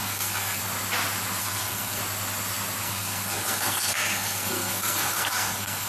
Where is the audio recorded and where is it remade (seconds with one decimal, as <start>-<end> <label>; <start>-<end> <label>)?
0.0-0.6 remade; 0.6-1.4 recorded; 1.4-2.0 remade; 2.0-2.8 recorded; 2.8-5.9 remade